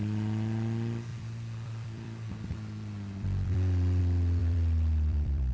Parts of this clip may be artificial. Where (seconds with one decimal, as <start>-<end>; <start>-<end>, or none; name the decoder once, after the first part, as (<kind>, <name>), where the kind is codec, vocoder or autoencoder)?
1.1-4.0 (vocoder, BigVGAN v2); 4.4-5.5